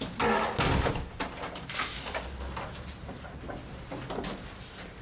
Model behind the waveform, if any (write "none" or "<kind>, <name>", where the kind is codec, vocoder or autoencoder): none